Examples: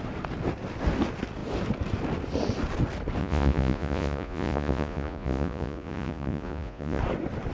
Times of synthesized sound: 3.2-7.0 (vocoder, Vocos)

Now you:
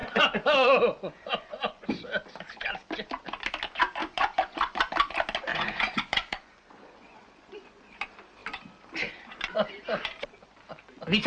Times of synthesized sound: 0.0-1.9 (vocoder, Vocos); 4.0-4.8; 5.5-8.0

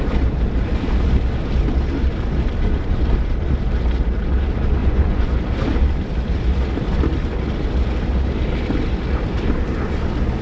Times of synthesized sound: 4.8-5.3 (vocoder, Vocos)